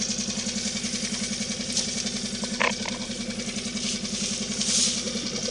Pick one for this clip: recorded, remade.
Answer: recorded